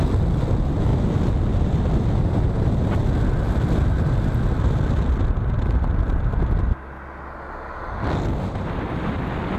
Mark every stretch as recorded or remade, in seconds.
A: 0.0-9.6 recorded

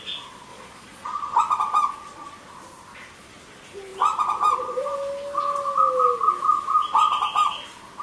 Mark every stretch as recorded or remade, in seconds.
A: 0.0-0.5 recorded; 0.5-1.4 remade; 1.4-8.0 recorded

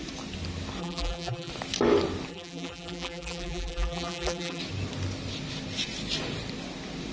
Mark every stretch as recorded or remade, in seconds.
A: 0.0-0.8 recorded; 0.8-1.5 remade; 1.5-2.3 recorded; 2.3-4.6 remade; 4.6-7.1 recorded